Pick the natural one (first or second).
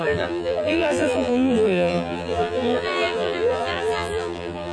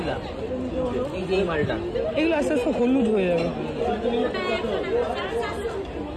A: second